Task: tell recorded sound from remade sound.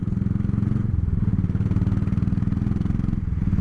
recorded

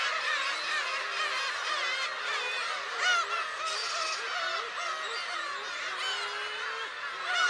recorded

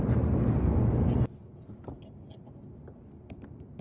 recorded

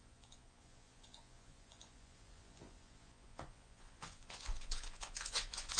remade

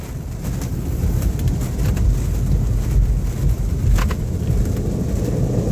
recorded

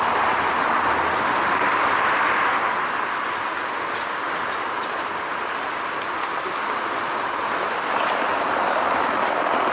recorded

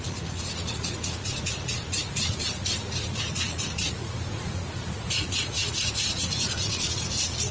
remade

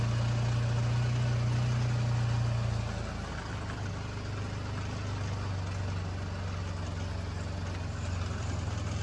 recorded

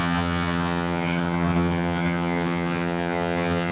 remade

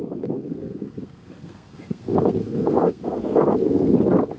remade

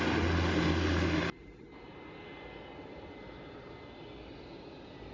recorded